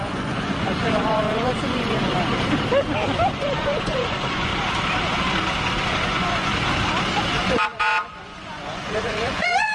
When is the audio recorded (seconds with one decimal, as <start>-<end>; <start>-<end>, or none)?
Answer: 2.1-3.3; 4.5-5.9; 6.5-7.3